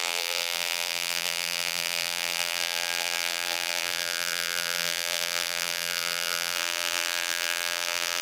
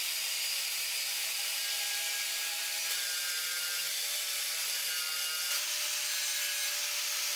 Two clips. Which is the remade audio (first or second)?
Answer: first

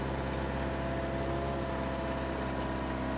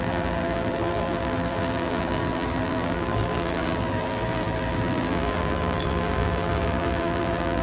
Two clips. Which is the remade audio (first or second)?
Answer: second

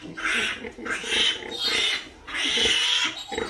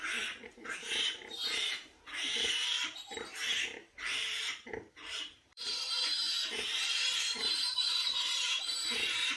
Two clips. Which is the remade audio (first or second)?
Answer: second